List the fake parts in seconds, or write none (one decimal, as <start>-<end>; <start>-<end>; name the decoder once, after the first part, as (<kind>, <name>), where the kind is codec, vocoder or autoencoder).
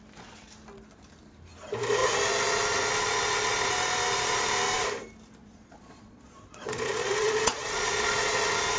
5.4-8.3 (vocoder, Vocos)